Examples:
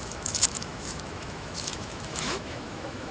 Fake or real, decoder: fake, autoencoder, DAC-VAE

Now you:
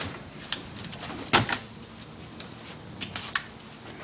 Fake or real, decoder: real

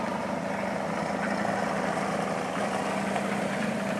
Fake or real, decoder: real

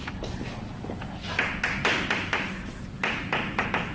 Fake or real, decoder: real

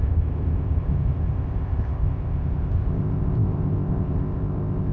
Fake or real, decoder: fake, codec, ZipCodec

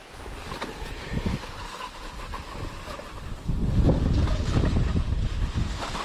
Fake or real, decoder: real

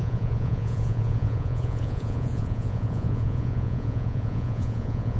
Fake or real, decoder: fake, vocoder, Vocos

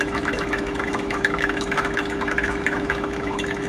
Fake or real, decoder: fake, autoencoder, DAC-VAE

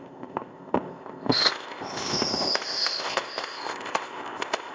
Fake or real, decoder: fake, codec, ZipCodec